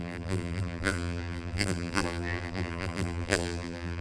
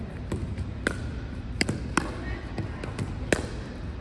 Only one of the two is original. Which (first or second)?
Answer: second